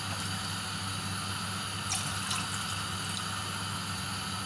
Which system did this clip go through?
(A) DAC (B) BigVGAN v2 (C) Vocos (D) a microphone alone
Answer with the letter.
D